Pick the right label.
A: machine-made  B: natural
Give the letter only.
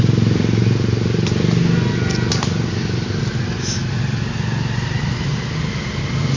B